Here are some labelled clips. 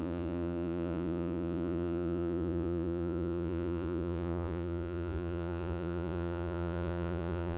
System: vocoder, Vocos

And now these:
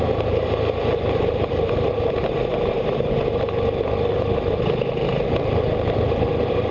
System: none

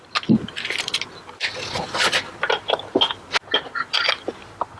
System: none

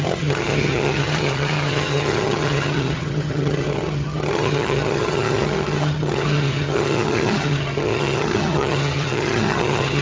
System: vocoder, HiFi-GAN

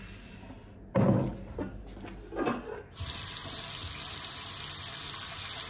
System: none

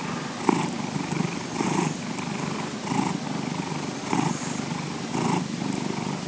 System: none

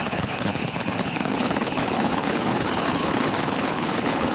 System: codec, HILCodec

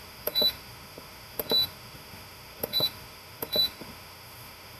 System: autoencoder, DAC-VAE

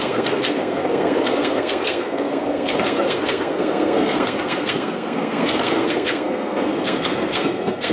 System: codec, SNAC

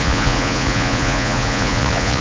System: vocoder, Vocos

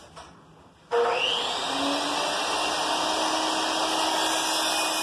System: none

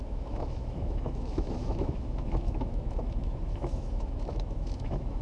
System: autoencoder, DAC-VAE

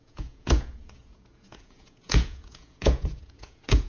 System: vocoder, Vocos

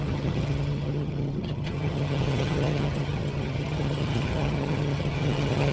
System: vocoder, HiFi-GAN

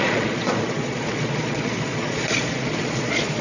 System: vocoder, Vocos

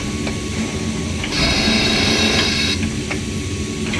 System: none